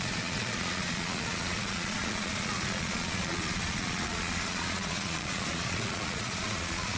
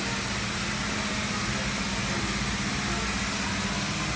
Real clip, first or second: second